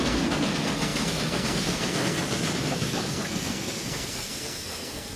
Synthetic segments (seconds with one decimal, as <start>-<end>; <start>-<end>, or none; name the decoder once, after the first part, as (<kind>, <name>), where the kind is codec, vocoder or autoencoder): 0.0-5.2 (codec, SNAC)